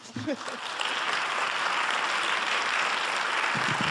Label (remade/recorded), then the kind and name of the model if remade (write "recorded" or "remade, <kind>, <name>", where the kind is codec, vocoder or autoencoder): recorded